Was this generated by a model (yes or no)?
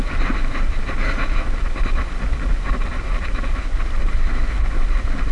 no